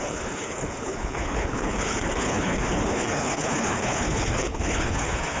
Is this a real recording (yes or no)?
no